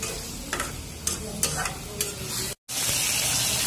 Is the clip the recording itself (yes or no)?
yes